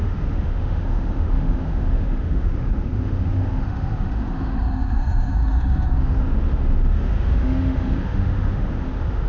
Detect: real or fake fake